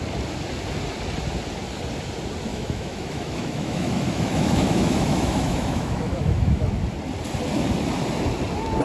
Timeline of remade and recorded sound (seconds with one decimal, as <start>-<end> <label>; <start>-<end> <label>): 0.0-2.5 recorded; 2.5-6.7 remade; 6.7-8.8 recorded